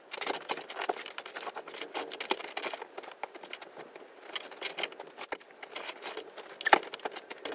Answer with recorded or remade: recorded